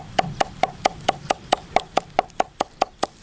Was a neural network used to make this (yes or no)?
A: yes